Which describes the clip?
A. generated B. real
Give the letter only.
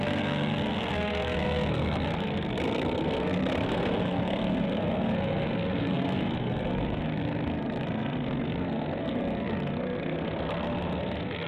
A